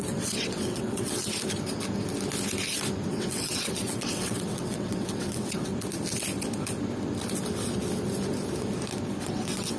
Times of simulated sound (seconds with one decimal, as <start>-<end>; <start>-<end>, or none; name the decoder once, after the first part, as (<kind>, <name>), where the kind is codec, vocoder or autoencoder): 0.0-1.3 (vocoder, WaveNeXt); 3.1-5.7; 9.2-9.8